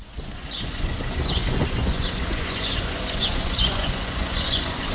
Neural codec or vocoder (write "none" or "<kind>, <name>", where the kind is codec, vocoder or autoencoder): vocoder, Vocos